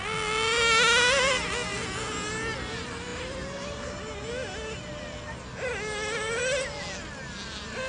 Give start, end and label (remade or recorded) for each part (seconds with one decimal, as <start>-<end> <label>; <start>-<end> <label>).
0.0-7.9 recorded